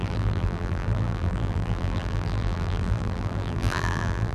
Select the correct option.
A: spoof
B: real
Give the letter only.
A